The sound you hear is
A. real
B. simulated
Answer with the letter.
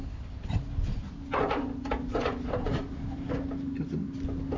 A